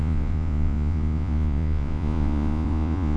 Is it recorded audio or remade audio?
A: remade